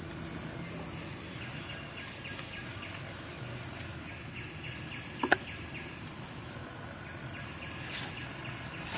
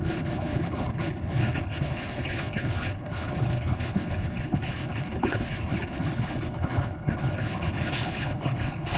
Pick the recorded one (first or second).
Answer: first